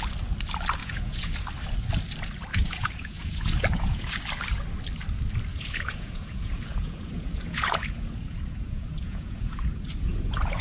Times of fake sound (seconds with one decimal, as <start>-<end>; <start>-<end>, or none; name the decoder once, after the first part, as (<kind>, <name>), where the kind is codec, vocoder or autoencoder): 0.8-1.3 (vocoder, Vocos); 2.5-4.2; 5.5-10.6